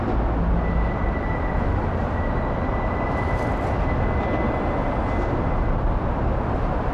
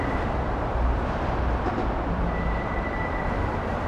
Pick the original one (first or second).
first